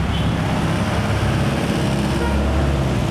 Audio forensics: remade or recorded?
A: recorded